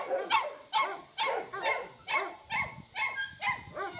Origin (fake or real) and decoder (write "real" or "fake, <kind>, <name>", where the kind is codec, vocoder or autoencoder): real